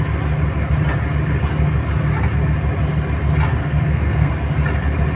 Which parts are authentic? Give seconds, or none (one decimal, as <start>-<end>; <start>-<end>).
0.0-3.6; 4.3-5.2